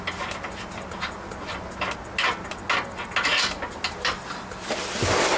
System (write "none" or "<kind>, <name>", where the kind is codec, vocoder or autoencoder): none